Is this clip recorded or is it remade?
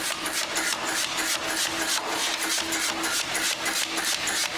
recorded